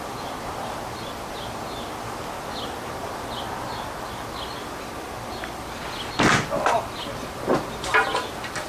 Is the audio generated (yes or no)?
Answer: no